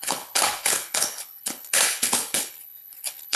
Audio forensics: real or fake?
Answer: fake